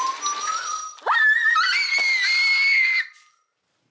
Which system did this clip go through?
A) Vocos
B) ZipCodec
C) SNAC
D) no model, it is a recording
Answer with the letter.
D